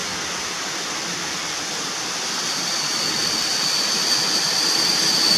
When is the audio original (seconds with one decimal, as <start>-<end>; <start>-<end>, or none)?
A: 0.0-5.4